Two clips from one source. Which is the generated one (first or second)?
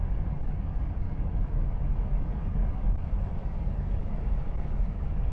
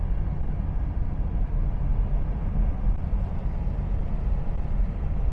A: first